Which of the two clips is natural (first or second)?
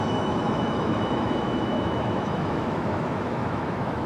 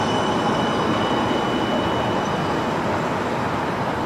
second